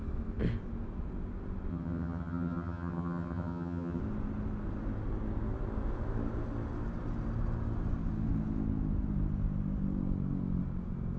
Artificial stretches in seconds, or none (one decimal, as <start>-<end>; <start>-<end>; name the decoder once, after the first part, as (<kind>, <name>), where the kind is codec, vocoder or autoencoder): 1.7-4.0 (vocoder, HiFi-GAN)